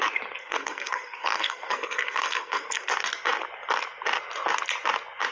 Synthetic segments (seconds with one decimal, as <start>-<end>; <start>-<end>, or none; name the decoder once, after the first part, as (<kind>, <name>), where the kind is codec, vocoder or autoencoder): 0.4-2.9 (codec, SNAC)